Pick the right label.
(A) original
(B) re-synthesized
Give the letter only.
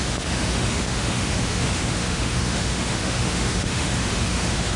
B